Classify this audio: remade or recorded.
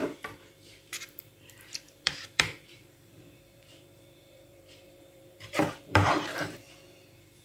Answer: remade